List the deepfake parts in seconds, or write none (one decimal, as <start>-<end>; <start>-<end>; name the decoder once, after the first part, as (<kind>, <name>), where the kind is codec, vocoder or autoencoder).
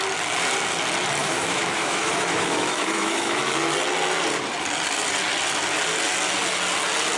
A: 1.2-3.4 (autoencoder, DAC-VAE)